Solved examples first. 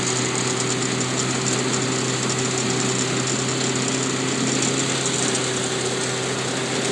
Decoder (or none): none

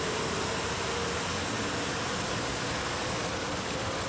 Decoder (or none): none